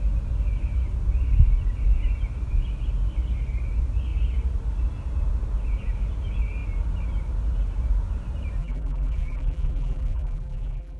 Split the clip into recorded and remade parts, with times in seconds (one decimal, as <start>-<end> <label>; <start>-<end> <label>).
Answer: 0.0-8.6 recorded; 8.6-11.0 remade